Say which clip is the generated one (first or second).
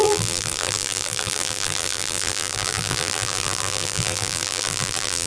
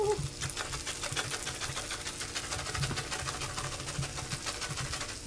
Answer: first